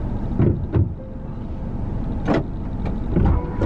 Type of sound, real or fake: real